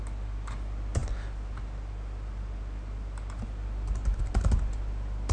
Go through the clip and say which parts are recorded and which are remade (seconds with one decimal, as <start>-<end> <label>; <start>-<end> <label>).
0.0-5.3 recorded

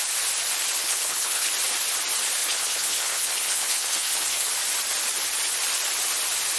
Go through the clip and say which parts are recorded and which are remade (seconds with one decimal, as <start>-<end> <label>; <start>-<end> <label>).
0.0-0.8 recorded; 0.8-1.5 remade; 1.5-2.4 recorded; 2.4-4.5 remade; 4.5-6.6 recorded

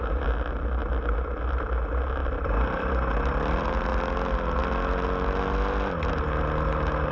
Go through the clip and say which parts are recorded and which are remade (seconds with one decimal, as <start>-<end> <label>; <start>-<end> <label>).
0.0-2.2 recorded; 2.2-2.9 remade; 2.9-7.1 recorded

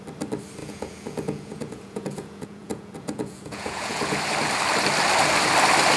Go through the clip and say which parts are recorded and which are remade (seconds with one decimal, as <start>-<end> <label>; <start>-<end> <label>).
0.0-0.6 recorded; 0.6-4.2 remade; 4.2-6.0 recorded

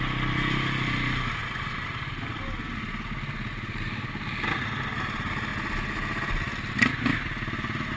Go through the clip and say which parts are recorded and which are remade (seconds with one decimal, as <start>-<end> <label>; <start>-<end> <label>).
0.0-8.0 recorded

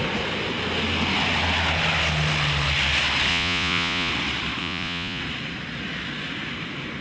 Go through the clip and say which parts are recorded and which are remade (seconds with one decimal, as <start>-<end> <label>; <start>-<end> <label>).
0.0-3.3 recorded; 3.3-4.1 remade; 4.1-4.6 recorded; 4.6-5.2 remade; 5.2-7.0 recorded